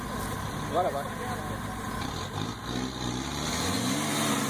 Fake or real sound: real